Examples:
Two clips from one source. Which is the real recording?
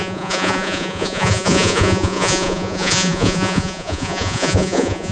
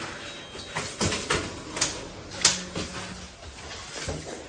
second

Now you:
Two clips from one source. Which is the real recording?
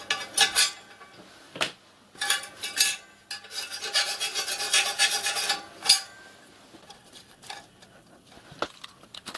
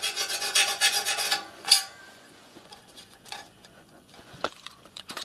first